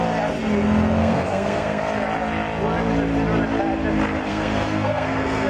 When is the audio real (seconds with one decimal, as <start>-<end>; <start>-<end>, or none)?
0.0-1.0; 1.8-4.3